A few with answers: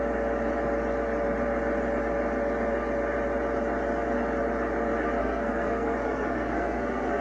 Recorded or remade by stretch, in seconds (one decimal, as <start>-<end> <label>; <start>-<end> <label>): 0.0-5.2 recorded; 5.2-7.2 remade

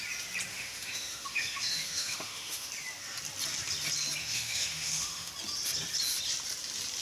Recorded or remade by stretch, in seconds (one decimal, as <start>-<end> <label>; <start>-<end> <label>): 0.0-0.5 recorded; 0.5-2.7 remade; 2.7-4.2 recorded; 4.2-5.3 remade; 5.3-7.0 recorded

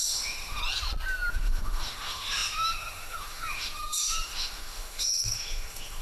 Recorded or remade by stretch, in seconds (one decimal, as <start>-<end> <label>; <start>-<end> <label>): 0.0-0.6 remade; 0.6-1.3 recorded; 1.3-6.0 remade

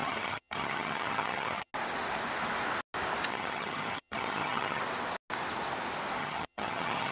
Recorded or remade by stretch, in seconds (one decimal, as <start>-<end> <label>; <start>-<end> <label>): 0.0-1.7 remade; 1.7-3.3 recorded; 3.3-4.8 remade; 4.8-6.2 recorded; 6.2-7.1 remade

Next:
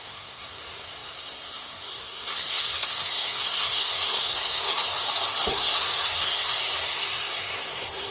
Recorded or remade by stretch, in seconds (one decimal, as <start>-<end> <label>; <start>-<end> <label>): 0.0-5.0 remade; 5.0-5.5 recorded; 5.5-8.1 remade